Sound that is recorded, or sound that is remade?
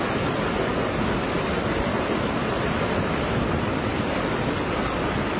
recorded